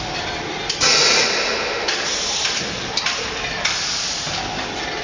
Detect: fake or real real